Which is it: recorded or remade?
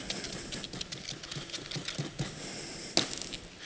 recorded